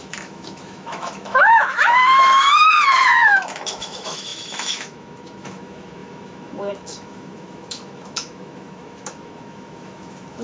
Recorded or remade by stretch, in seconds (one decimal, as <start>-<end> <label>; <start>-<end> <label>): 0.0-10.4 remade